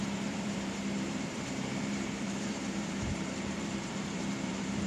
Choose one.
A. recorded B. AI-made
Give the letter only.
B